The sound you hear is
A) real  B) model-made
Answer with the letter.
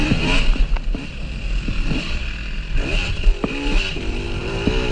A